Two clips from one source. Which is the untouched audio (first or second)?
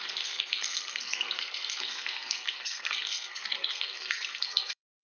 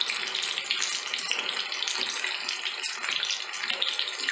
second